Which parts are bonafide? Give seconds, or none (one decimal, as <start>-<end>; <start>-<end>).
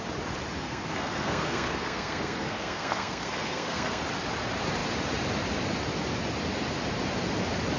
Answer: 0.0-0.6; 4.0-7.8